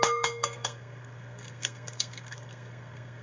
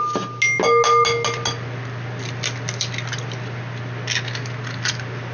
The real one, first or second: second